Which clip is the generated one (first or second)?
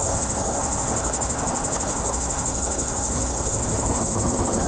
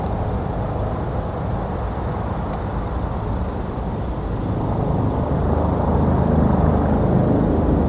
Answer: first